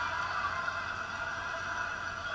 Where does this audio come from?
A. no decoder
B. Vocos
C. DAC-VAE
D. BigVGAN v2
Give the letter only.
A